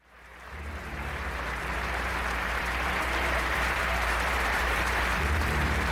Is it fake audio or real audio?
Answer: fake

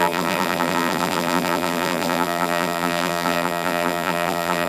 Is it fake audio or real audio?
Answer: fake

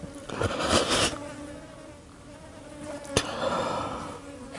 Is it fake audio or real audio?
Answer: real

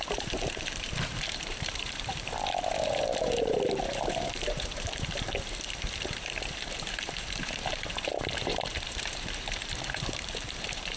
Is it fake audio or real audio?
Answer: fake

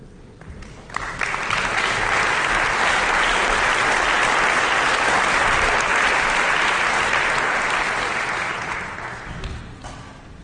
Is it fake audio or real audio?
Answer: real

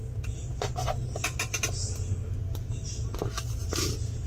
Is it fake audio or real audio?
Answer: real